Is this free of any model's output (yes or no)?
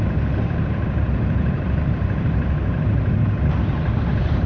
no